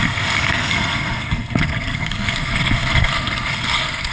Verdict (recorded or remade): remade